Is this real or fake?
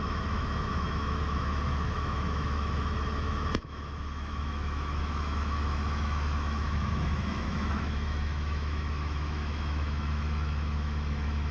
fake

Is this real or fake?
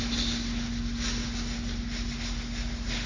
real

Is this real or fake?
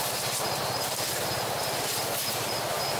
real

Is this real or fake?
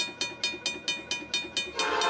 real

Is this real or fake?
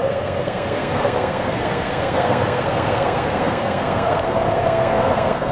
fake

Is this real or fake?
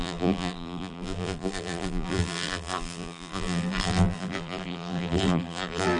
fake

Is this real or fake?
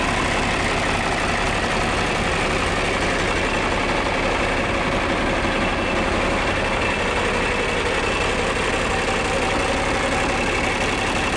real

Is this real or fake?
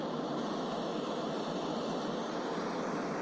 real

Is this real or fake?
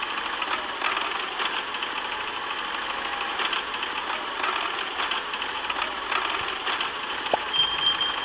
real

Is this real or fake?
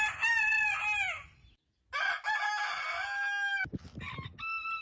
real